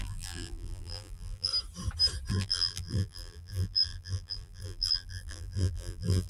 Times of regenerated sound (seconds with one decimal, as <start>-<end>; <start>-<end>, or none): 0.0-1.5; 2.3-6.3